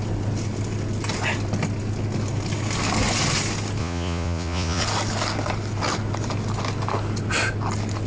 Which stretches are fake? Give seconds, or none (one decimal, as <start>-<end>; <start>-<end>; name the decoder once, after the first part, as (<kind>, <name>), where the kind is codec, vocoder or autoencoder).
3.8-4.8 (vocoder, Vocos)